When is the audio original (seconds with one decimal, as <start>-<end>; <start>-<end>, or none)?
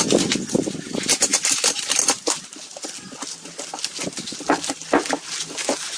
0.0-6.0